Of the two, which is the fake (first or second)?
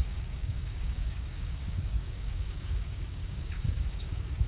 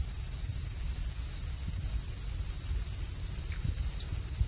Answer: first